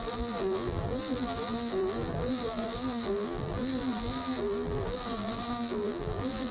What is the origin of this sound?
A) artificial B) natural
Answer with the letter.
A